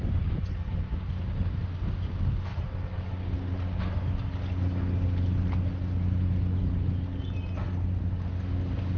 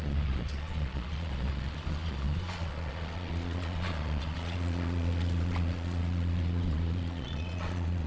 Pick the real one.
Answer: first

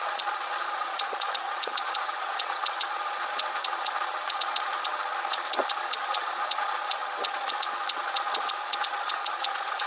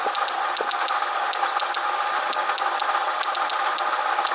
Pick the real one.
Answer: second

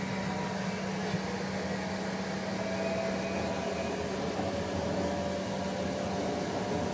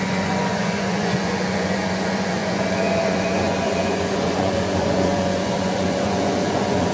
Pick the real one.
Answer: first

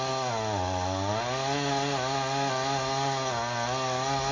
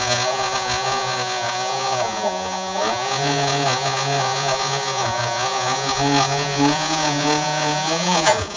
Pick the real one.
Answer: first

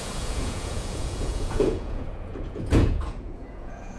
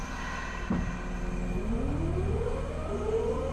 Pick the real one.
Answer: second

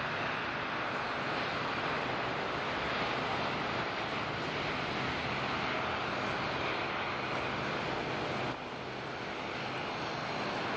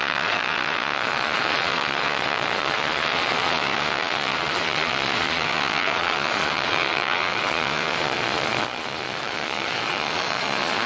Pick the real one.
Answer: first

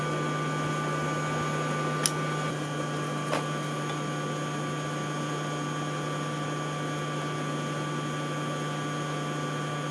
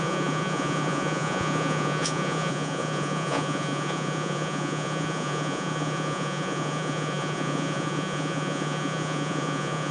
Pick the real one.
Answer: first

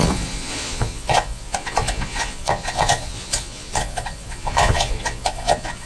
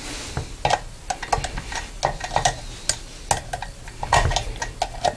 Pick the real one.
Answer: second